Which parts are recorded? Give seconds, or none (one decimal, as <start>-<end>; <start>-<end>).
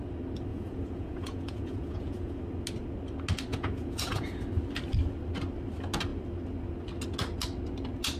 0.0-0.5; 2.4-3.5; 4.4-8.2